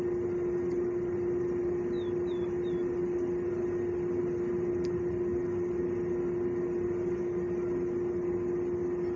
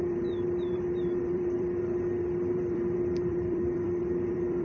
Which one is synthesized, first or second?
second